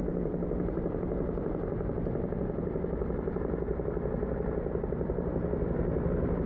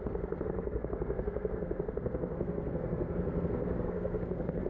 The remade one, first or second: second